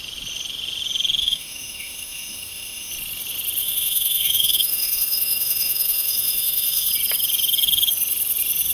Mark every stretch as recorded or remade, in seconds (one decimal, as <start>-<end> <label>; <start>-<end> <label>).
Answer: 0.0-1.2 recorded; 1.2-2.9 remade; 2.9-3.6 recorded; 3.6-6.9 remade; 6.9-8.7 recorded